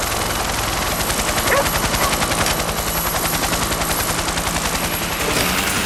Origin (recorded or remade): recorded